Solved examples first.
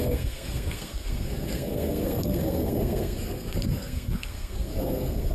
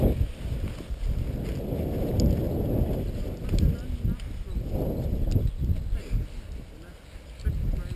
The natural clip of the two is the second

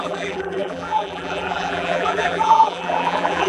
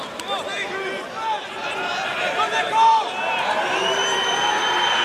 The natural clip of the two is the second